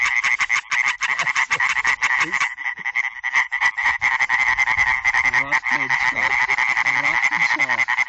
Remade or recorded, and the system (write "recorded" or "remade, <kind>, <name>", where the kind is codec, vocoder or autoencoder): recorded